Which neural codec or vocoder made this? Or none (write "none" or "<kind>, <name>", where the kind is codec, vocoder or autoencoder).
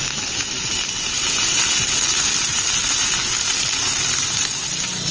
none